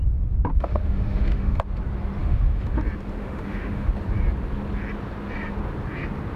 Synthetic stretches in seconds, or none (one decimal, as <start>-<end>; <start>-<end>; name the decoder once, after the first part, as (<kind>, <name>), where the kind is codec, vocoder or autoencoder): 0.5-1.6 (autoencoder, DAC-VAE); 2.2-2.8; 3.2-3.9